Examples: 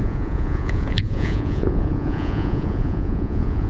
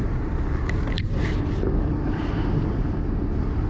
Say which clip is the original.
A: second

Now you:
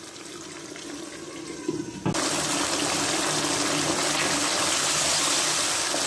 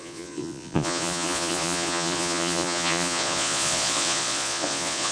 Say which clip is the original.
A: first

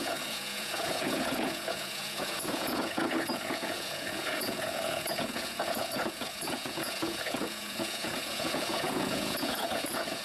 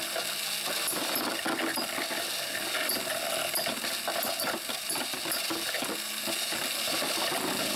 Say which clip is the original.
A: second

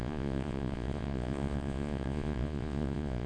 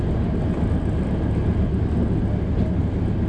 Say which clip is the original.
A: second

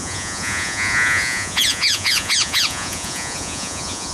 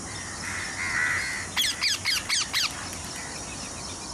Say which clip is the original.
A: second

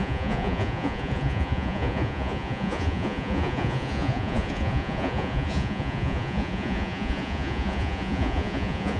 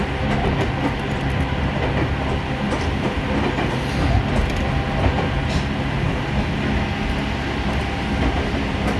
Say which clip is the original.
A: second